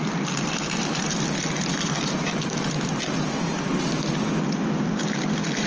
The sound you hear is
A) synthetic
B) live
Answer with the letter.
B